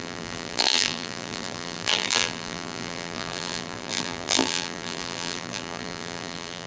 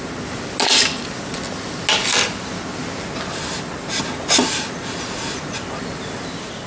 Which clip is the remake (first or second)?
first